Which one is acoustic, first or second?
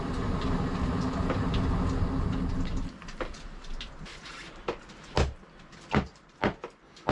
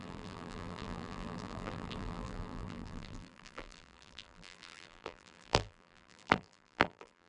first